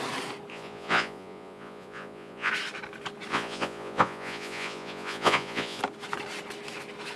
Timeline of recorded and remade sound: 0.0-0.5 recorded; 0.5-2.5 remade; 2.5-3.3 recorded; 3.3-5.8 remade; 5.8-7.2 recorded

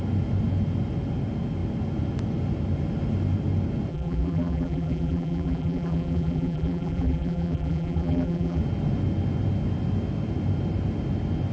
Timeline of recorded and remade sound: 0.0-3.9 recorded; 3.9-8.6 remade; 8.6-11.5 recorded

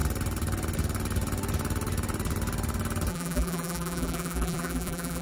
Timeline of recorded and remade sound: 0.0-3.1 recorded; 3.1-5.2 remade

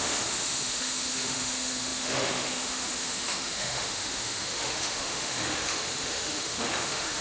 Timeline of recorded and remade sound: 0.0-7.2 remade

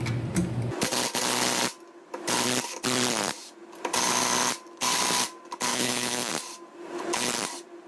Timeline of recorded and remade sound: 0.0-5.7 recorded; 5.7-6.3 remade; 6.3-7.9 recorded

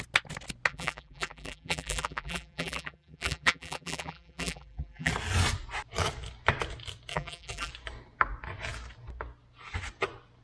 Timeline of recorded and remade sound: 0.0-0.7 recorded; 0.7-5.1 remade; 5.1-7.1 recorded; 7.1-7.7 remade; 7.7-10.4 recorded